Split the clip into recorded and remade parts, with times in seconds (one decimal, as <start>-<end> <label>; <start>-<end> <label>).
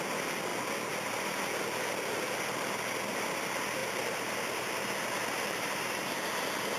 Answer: 0.0-3.8 recorded; 3.8-4.7 remade; 4.7-5.2 recorded; 5.2-6.1 remade; 6.1-6.8 recorded